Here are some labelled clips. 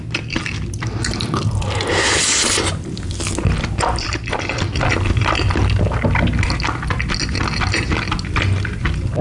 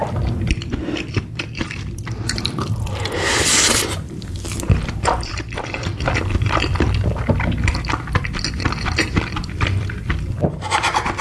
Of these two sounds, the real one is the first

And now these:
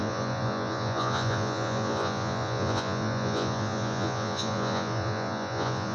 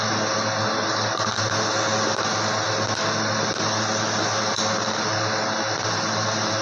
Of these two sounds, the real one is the second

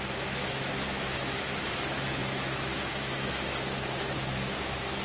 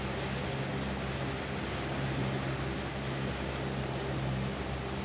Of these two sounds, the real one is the second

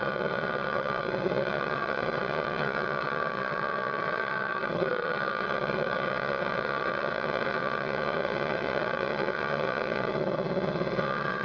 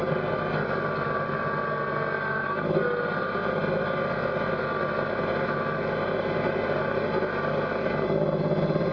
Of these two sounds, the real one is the second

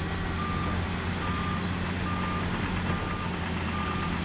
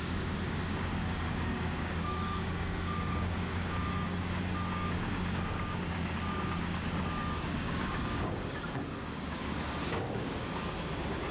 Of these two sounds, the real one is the first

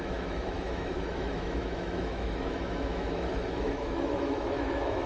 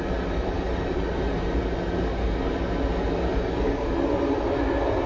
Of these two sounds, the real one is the second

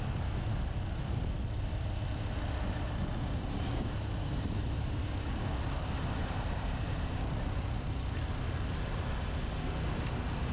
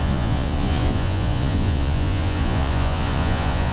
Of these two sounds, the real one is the first